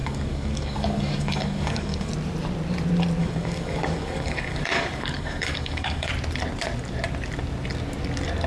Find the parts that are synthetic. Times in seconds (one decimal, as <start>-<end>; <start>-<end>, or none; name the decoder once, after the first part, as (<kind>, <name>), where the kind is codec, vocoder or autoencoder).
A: 0.0-2.1 (codec, DAC); 3.2-6.1